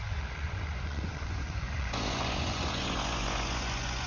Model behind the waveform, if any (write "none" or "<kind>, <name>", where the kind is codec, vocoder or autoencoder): vocoder, Vocos